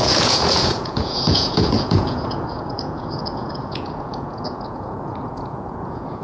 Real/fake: fake